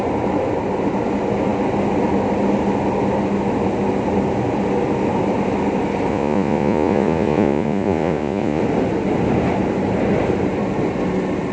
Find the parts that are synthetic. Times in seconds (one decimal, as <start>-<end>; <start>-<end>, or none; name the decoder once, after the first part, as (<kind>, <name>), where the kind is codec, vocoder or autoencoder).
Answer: 6.1-8.6 (vocoder, Vocos)